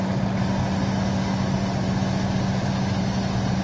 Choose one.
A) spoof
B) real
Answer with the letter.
B